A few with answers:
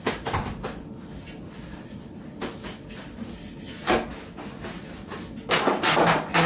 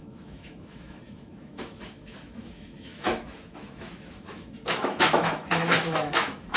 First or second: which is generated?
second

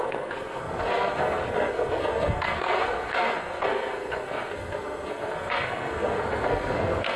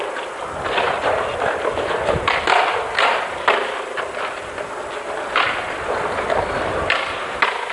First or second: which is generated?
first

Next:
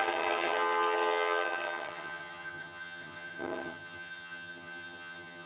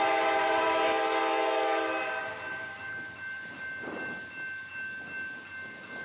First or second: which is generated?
first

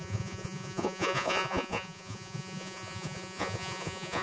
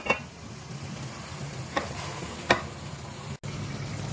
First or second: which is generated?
first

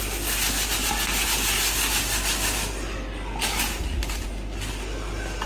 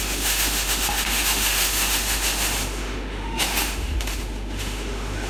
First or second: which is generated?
second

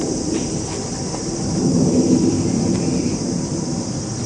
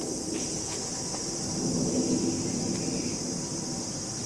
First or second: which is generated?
first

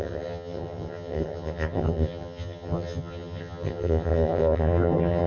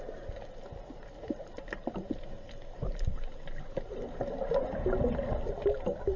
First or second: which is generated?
first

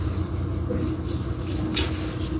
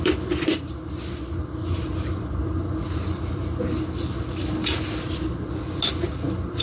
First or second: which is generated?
second